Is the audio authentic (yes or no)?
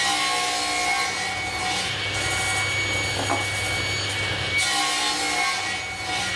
yes